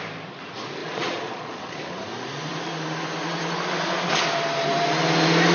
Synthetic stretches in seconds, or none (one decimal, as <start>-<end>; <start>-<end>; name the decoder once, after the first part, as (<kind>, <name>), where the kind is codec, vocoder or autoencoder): 0.8-1.6 (vocoder, Vocos)